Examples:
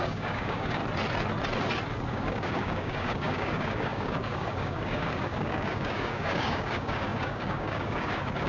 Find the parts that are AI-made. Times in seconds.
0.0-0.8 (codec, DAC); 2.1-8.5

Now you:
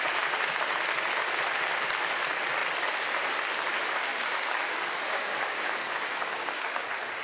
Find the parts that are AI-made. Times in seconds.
4.1-6.8 (codec, DAC)

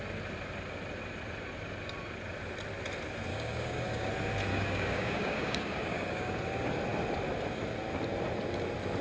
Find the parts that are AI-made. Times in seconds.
3.3-4.1 (codec, DAC); 4.5-6.4